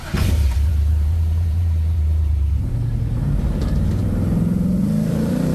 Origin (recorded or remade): remade